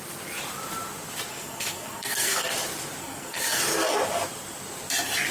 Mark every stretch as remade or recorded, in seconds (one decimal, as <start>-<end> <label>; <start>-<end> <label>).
0.0-1.3 recorded; 1.3-2.5 remade; 2.5-3.0 recorded; 3.0-3.6 remade; 3.6-5.3 recorded